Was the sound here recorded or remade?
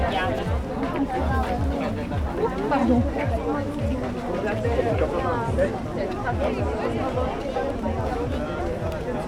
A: recorded